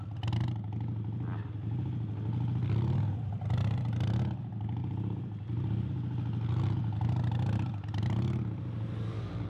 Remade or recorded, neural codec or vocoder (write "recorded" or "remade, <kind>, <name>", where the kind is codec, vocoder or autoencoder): recorded